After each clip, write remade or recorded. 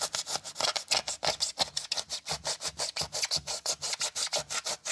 recorded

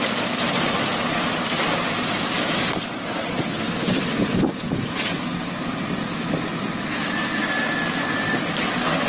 recorded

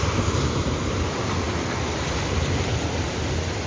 recorded